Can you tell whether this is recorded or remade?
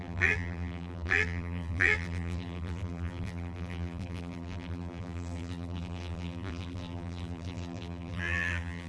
remade